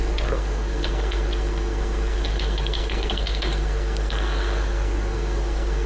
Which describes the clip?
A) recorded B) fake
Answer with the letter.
B